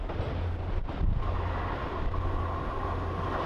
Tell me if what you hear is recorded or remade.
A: recorded